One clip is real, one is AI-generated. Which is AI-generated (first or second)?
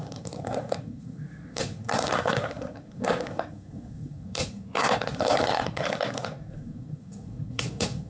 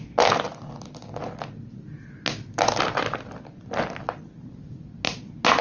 first